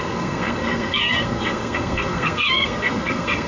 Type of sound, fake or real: fake